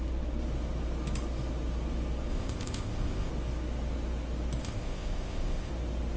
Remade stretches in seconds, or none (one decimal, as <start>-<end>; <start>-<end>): 2.3-3.3; 4.6-5.7